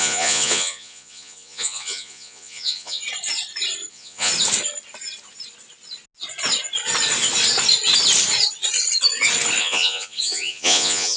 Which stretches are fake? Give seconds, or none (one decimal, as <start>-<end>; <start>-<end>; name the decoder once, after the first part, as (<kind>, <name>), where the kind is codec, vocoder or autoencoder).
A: 0.0-3.0 (vocoder, Vocos); 3.9-4.3; 9.6-11.2